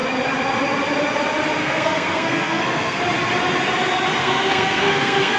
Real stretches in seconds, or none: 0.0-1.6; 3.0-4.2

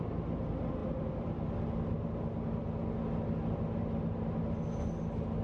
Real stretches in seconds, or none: 0.0-5.4

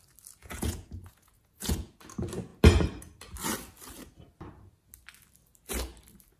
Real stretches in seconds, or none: 0.0-0.4; 1.9-6.4

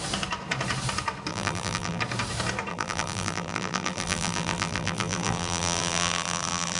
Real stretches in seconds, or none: 0.0-1.3; 2.0-2.7

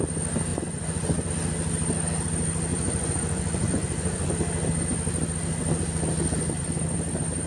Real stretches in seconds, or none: 0.0-0.5; 1.3-2.7; 4.3-7.5

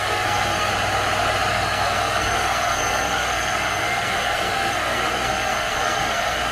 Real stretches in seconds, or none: 0.7-1.5

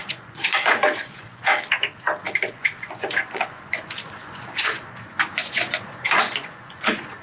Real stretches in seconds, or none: 1.5-2.5